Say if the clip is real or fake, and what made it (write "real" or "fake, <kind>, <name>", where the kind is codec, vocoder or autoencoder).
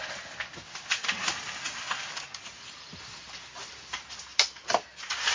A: real